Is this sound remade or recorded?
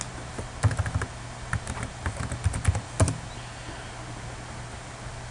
recorded